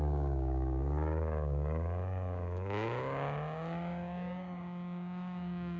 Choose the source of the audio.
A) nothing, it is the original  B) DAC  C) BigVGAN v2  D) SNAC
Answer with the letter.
B